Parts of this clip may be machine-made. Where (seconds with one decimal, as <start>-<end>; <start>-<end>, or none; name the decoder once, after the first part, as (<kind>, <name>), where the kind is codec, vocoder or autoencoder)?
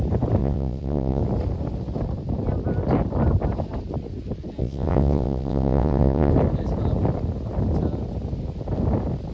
0.4-1.2 (vocoder, WaveNeXt); 4.6-6.3